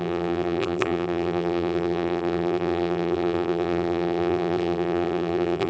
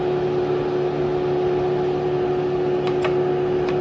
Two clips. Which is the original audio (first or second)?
second